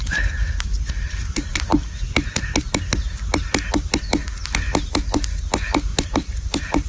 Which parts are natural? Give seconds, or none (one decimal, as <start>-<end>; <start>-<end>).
0.0-5.9